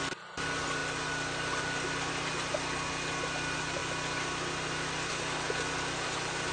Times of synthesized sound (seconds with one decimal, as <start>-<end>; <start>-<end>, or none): none